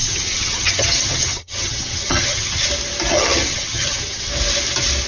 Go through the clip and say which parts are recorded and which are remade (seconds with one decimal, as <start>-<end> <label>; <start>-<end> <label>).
0.0-2.7 remade; 2.7-3.1 recorded; 3.1-4.3 remade; 4.3-5.1 recorded